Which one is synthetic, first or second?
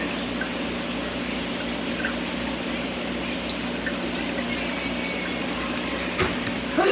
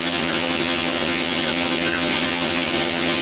second